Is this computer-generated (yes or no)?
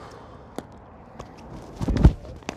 no